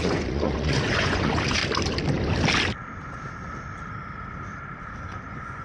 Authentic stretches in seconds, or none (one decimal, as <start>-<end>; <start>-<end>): 1.6-5.0